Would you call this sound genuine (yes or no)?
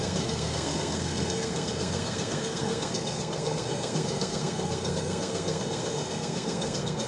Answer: no